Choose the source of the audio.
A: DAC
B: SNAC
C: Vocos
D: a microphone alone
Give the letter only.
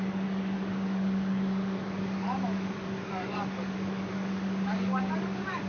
A